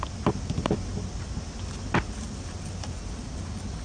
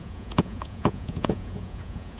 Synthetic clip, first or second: second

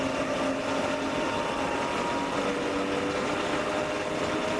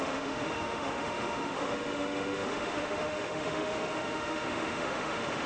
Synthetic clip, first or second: second